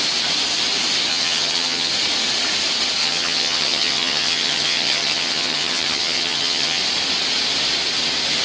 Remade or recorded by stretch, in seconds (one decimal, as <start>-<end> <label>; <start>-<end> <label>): 0.0-1.1 recorded; 1.1-1.9 remade; 1.9-3.0 recorded; 3.0-6.8 remade; 6.8-8.4 recorded